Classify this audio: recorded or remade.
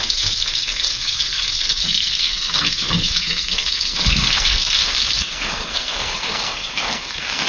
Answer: remade